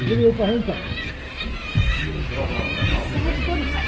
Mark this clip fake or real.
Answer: real